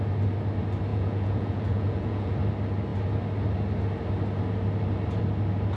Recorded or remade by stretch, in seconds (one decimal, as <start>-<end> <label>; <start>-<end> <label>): 0.0-0.9 recorded; 0.9-2.3 remade; 2.3-5.8 recorded